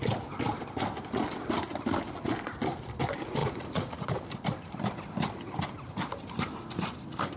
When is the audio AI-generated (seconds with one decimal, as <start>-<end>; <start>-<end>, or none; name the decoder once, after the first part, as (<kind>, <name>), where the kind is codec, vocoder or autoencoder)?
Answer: 3.4-4.1 (vocoder, Vocos)